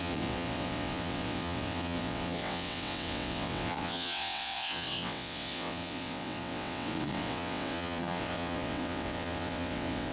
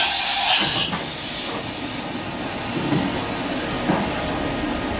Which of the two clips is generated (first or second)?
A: first